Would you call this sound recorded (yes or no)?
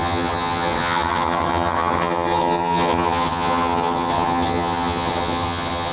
no